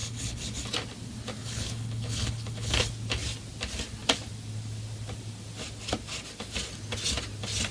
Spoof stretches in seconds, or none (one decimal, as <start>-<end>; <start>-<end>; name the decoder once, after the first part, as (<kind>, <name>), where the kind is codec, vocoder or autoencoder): 0.0-0.5 (codec, HILCodec); 1.4-2.9